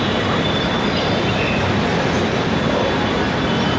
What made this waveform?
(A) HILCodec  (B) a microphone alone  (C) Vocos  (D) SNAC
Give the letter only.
B